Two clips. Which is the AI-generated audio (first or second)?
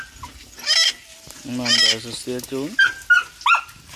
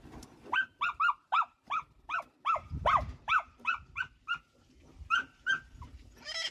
second